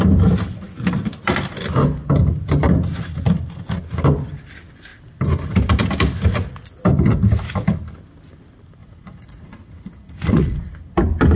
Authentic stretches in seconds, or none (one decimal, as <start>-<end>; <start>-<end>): 0.0-8.8; 10.7-11.4